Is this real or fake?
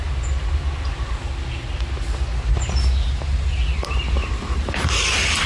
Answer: real